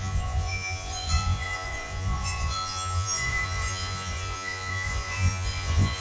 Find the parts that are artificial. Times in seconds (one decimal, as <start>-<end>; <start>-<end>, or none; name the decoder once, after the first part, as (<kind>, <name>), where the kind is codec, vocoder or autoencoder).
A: 0.0-6.0 (vocoder, Vocos)